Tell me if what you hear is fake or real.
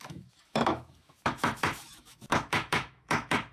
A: fake